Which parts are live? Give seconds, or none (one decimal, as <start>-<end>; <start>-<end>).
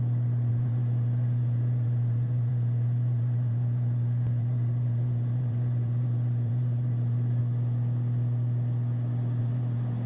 0.0-0.5; 7.4-9.4